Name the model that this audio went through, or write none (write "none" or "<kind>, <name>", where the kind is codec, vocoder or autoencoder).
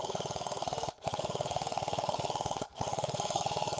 codec, SNAC